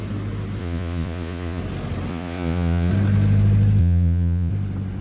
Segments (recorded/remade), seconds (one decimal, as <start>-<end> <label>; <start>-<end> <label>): 0.0-0.6 recorded; 0.6-1.6 remade; 1.6-2.1 recorded; 2.1-2.9 remade; 2.9-3.8 recorded; 3.8-4.5 remade; 4.5-5.0 recorded